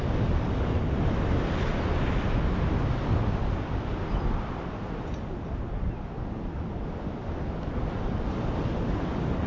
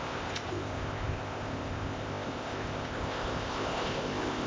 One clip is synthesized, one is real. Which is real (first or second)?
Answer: first